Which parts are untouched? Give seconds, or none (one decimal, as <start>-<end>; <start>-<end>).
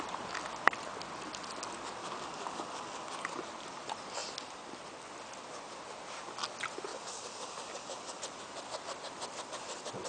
0.0-2.0; 3.4-6.9; 8.2-10.1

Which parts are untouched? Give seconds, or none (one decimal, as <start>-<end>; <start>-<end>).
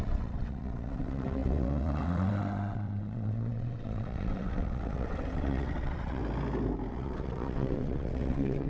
6.2-6.9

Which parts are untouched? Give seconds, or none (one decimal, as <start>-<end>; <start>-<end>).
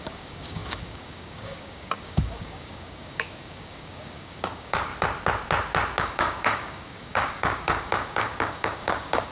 4.9-6.0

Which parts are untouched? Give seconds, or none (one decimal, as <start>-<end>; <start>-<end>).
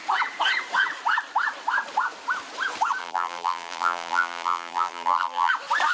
0.0-3.0; 5.5-5.9